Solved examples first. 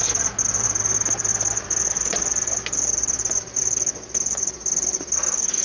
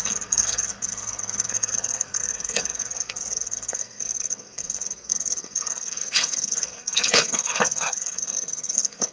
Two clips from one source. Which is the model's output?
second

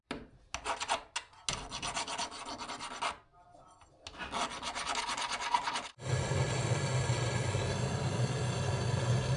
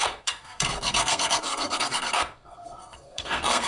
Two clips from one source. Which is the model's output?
second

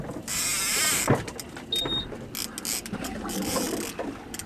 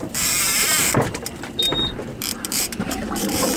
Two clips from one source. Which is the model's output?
second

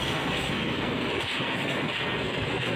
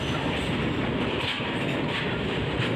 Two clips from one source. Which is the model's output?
first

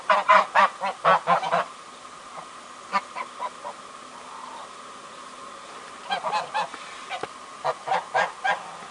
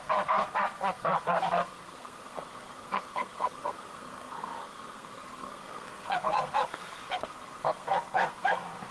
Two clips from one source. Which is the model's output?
second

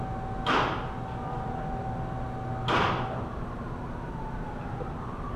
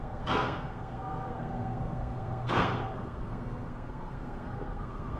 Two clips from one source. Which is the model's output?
second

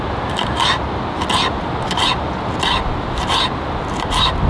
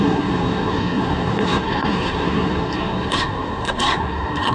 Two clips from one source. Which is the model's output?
second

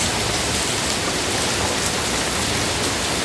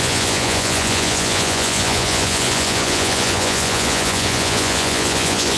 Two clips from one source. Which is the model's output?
second